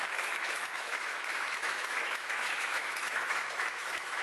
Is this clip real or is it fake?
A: fake